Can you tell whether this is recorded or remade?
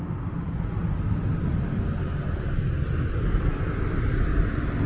recorded